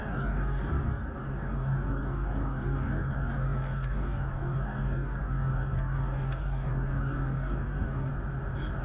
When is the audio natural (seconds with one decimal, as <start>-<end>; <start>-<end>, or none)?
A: 8.1-8.8